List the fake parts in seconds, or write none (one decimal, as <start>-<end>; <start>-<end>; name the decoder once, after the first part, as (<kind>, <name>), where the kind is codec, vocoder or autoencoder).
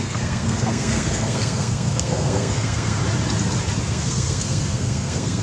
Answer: 0.0-3.0 (codec, SNAC); 3.9-5.4